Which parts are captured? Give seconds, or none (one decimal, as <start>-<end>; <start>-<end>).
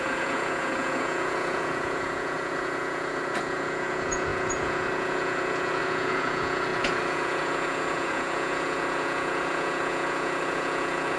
none